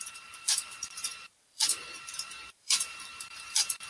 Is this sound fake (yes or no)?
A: yes